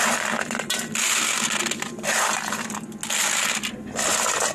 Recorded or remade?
recorded